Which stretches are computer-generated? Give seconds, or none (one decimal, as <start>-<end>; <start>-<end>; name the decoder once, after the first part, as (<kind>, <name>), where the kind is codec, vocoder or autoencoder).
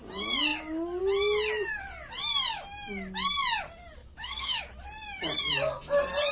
4.0-4.6 (codec, DAC)